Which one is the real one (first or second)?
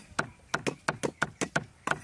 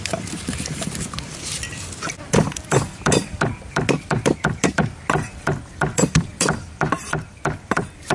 first